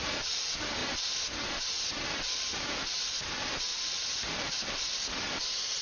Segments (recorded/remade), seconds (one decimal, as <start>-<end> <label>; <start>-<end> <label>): 0.0-0.8 remade; 0.8-2.1 recorded; 2.1-5.8 remade

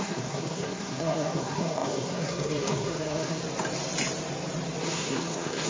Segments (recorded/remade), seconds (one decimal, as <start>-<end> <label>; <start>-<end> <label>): 0.0-3.4 remade; 3.4-4.8 recorded; 4.8-5.7 remade

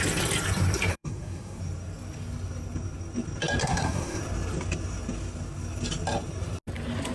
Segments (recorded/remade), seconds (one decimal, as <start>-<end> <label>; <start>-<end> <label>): 0.0-0.9 recorded; 0.9-1.6 remade; 1.6-3.6 recorded; 3.6-4.2 remade; 4.2-7.1 recorded

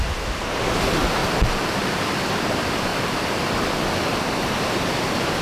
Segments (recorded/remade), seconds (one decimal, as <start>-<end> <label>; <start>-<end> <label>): 0.0-1.2 recorded; 1.2-2.0 remade; 2.0-2.9 recorded; 2.9-3.4 remade; 3.4-5.4 recorded

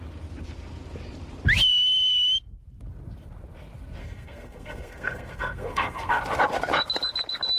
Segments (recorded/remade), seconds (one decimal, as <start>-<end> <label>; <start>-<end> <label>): 0.0-4.0 recorded; 4.0-6.2 remade; 6.2-7.6 recorded

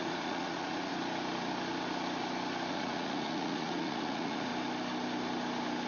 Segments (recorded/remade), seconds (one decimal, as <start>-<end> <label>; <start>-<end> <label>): 0.0-0.9 remade; 0.9-2.7 recorded; 2.7-4.5 remade; 4.5-5.9 recorded

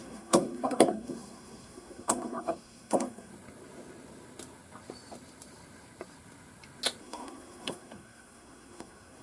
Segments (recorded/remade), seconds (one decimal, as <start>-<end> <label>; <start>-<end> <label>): 0.0-3.3 remade; 3.3-7.0 recorded; 7.0-9.2 remade

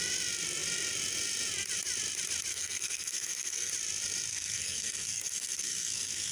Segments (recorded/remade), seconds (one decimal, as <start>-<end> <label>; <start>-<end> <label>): 0.0-2.5 recorded; 2.5-3.7 remade; 3.7-4.3 recorded; 4.3-6.3 remade